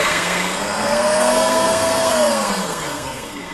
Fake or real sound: fake